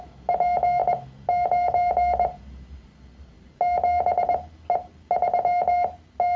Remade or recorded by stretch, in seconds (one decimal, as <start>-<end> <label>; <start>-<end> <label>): 0.0-6.4 recorded